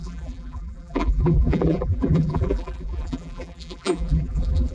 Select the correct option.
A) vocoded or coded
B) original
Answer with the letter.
A